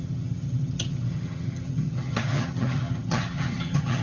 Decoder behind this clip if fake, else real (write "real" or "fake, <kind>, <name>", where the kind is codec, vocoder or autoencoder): fake, vocoder, HiFi-GAN